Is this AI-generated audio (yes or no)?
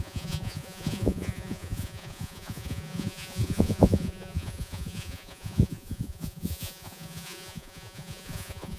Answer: yes